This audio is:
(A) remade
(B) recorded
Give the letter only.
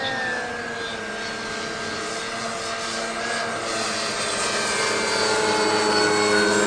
B